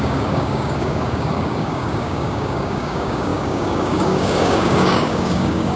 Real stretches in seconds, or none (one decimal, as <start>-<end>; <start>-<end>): none

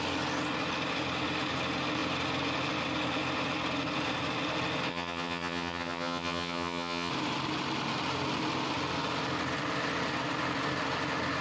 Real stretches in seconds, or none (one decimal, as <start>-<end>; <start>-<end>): 0.0-4.9; 7.1-11.4

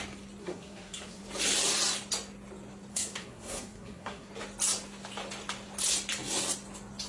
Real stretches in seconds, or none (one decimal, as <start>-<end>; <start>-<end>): 0.0-0.4; 1.2-2.9; 4.3-7.1